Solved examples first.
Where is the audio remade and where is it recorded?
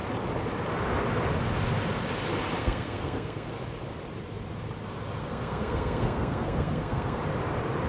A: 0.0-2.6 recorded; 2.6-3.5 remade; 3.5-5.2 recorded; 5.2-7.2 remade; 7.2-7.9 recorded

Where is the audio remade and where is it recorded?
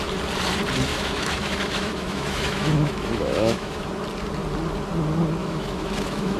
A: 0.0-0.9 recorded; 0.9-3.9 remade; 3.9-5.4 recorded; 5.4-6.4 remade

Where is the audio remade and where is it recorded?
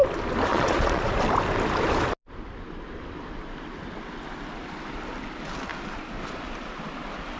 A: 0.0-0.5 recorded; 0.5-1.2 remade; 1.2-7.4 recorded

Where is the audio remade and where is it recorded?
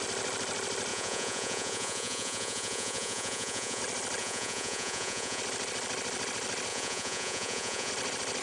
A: 0.0-0.9 recorded; 0.9-3.8 remade; 3.8-4.2 recorded; 4.2-5.4 remade; 5.4-6.7 recorded; 6.7-7.9 remade; 7.9-8.4 recorded